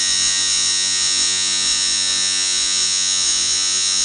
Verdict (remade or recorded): remade